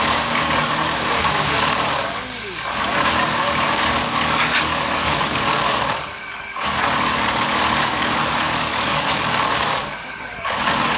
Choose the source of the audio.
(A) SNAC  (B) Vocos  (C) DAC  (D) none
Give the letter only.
C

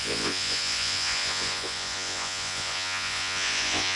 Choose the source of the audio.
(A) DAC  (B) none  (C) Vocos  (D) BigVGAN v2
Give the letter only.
C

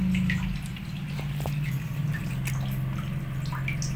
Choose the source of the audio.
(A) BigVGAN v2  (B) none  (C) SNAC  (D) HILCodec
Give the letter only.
B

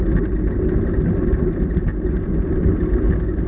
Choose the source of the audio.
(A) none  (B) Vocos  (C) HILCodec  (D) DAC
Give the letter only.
A